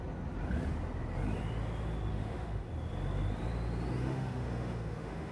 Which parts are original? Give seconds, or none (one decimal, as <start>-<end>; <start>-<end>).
0.0-2.1; 2.7-4.0